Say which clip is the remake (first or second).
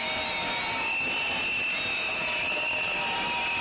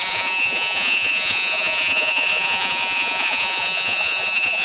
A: second